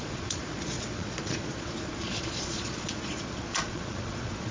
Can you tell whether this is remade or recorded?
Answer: remade